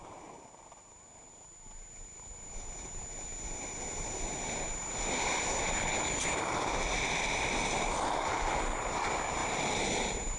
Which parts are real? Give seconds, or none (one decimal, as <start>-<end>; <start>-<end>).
0.0-10.4